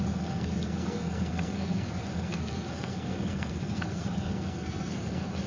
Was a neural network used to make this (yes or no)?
yes